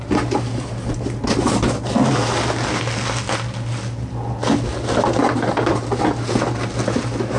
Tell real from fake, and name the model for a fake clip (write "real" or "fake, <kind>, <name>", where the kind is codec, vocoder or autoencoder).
real